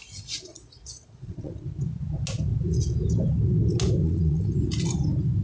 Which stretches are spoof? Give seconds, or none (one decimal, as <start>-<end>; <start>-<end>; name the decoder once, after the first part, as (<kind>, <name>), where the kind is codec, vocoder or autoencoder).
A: 0.5-1.5 (vocoder, Vocos); 4.0-4.5